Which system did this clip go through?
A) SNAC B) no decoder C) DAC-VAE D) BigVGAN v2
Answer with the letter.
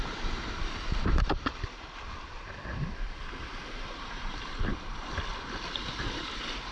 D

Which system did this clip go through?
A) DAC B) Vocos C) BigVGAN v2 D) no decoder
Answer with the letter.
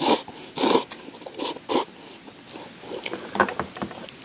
D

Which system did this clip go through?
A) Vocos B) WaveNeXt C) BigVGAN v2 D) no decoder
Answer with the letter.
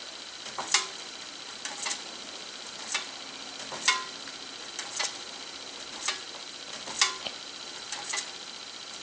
D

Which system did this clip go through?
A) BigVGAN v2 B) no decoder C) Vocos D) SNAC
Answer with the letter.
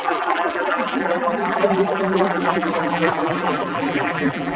A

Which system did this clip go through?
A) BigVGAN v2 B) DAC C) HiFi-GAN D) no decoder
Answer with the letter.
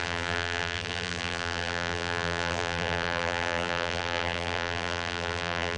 A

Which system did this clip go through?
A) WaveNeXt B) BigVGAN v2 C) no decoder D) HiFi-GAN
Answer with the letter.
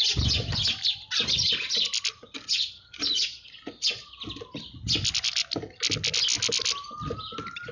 C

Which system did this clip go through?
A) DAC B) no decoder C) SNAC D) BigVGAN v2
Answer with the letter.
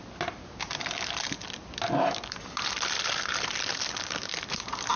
D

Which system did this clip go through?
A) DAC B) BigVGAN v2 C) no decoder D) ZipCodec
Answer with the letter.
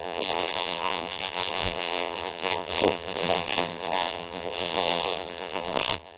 B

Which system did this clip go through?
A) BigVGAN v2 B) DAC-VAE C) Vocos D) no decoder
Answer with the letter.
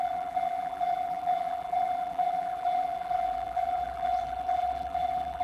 A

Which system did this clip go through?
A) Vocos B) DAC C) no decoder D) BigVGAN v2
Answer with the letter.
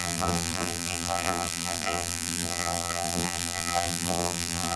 D